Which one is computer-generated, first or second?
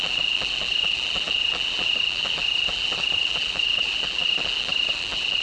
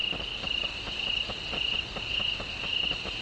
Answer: first